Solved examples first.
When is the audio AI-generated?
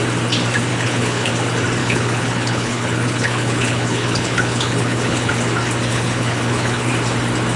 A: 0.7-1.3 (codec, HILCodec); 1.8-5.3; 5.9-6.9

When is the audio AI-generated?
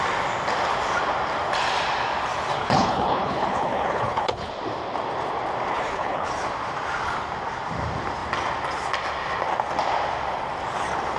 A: 2.6-4.5 (codec, HILCodec); 5.7-6.3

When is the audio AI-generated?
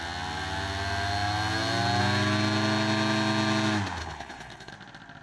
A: 4.0-4.7 (codec, HILCodec)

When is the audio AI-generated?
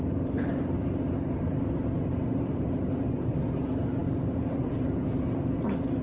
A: none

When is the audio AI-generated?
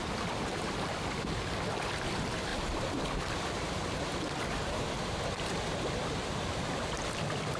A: none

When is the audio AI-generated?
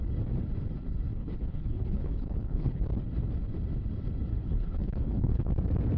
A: 1.1-2.8 (codec, HILCodec); 4.3-5.5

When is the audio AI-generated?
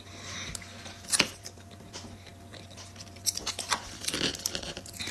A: none